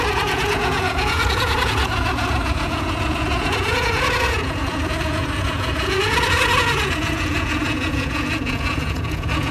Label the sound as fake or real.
fake